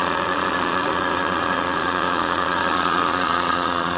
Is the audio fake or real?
fake